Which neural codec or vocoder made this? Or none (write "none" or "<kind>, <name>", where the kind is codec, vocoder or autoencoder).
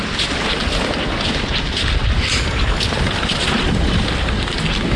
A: none